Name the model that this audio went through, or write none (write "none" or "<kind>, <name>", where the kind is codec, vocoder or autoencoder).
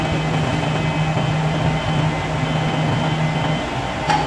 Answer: none